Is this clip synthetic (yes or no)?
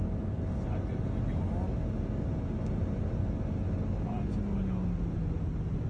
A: no